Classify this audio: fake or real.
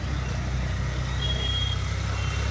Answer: real